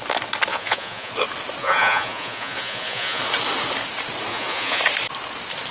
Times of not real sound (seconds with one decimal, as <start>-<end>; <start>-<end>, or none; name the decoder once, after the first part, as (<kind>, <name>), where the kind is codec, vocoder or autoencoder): 0.5-1.1 (vocoder, Vocos); 1.6-3.2; 4.3-4.8